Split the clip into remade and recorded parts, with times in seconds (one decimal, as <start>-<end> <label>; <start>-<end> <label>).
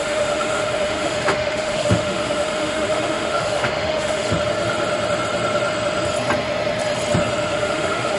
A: 0.0-4.3 remade; 4.3-7.5 recorded; 7.5-8.2 remade